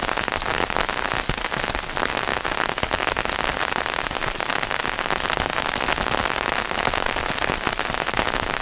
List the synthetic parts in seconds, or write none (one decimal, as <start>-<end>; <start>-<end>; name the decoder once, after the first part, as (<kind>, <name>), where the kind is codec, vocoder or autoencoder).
none